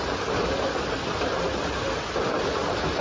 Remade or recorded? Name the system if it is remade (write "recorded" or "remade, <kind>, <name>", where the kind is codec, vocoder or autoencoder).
recorded